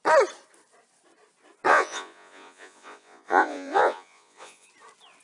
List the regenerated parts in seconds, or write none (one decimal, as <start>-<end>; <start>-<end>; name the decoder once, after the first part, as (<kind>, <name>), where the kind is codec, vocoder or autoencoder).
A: 1.7-4.7 (vocoder, Vocos)